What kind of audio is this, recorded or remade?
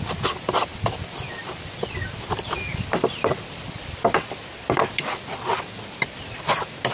recorded